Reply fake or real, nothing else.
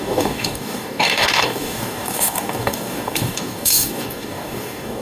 fake